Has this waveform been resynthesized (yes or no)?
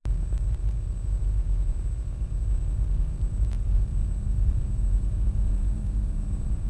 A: yes